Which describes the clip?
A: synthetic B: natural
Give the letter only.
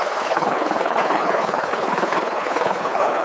A